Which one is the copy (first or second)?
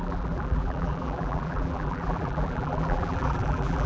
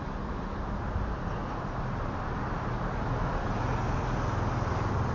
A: first